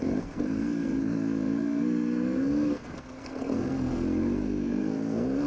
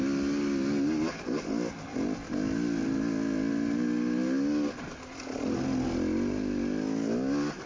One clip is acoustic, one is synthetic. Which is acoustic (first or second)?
second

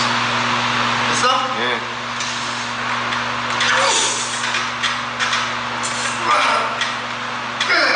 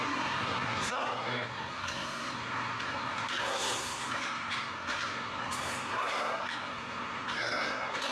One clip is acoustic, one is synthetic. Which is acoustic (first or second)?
first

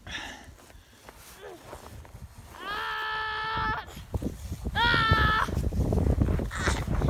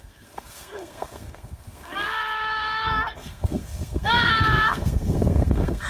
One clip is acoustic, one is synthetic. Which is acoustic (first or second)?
first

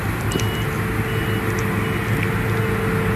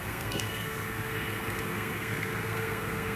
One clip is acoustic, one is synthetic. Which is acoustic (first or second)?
first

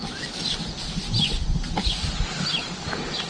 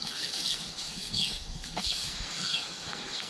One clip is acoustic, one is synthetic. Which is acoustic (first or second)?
first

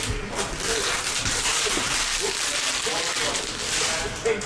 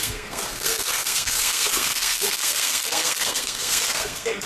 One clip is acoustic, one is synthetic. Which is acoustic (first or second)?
first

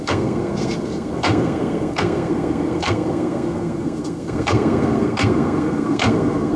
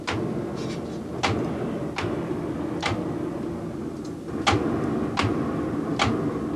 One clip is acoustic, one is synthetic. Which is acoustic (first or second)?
second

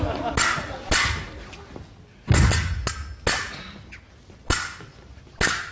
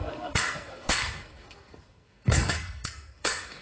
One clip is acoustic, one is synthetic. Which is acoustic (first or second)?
first